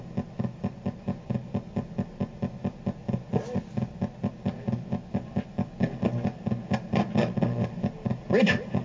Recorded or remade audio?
recorded